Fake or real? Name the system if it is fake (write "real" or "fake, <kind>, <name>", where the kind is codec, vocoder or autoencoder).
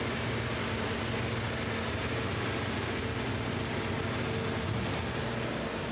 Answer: real